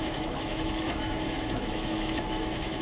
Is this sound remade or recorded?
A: remade